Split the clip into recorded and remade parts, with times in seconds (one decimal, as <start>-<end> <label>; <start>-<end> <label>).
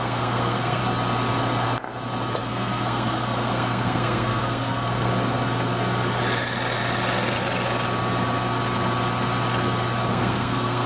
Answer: 0.0-0.8 remade; 0.8-2.4 recorded; 2.4-5.1 remade; 5.1-10.1 recorded; 10.1-10.9 remade